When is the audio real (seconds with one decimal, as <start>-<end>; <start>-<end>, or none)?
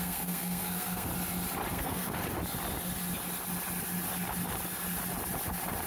1.1-1.7; 2.2-5.9